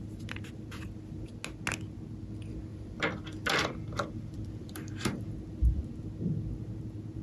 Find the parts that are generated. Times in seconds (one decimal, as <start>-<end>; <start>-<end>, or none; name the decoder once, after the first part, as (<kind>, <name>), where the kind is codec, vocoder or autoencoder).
2.7-5.2 (vocoder, BigVGAN v2)